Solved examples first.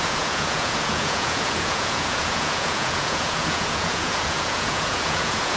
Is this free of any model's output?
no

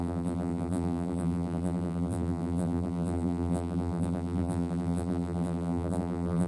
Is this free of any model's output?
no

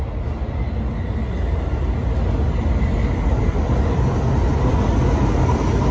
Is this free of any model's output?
yes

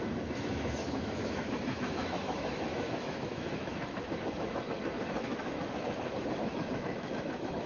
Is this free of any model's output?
no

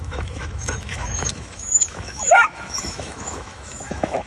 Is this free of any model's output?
no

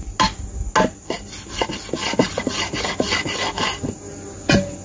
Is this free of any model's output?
yes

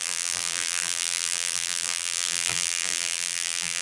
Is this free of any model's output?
no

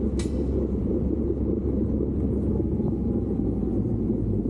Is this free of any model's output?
yes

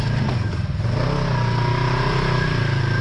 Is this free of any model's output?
yes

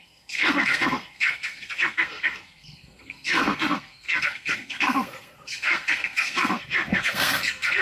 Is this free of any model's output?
no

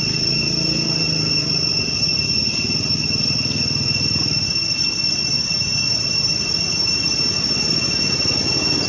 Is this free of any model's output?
yes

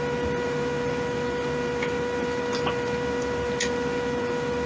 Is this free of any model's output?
yes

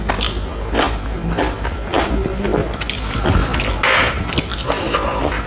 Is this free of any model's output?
yes